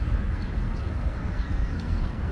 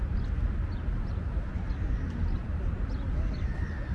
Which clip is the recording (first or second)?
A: second